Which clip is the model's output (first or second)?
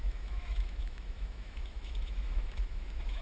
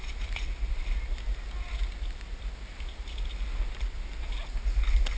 first